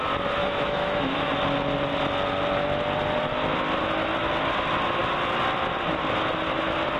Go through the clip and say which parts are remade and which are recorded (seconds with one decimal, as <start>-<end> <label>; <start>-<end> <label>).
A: 0.0-0.4 recorded; 0.4-1.3 remade; 1.3-7.0 recorded

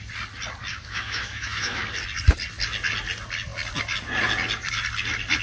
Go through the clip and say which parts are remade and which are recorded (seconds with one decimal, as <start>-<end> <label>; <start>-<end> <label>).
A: 0.0-0.7 recorded; 0.7-1.8 remade; 1.8-5.4 recorded

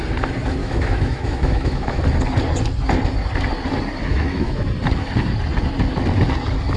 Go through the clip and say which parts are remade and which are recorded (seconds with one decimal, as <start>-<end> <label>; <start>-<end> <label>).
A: 0.0-0.6 recorded; 0.6-2.0 remade; 2.0-4.1 recorded; 4.1-4.7 remade; 4.7-6.8 recorded

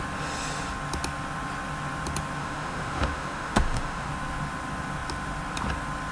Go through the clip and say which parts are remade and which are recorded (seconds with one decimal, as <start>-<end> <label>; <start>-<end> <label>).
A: 0.0-2.4 recorded; 2.4-4.1 remade; 4.1-6.1 recorded

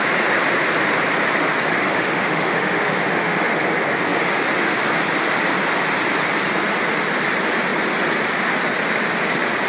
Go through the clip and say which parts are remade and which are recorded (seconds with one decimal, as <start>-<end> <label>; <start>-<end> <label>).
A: 0.0-1.7 recorded; 1.7-3.6 remade; 3.6-9.7 recorded

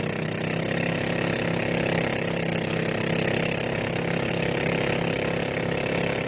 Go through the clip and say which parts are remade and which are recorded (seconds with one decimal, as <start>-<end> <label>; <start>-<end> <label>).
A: 0.0-6.3 recorded